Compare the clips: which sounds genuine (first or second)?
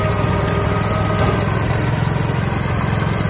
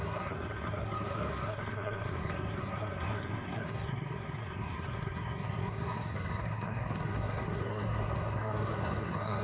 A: first